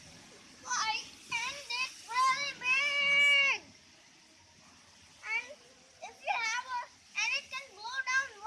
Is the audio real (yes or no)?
yes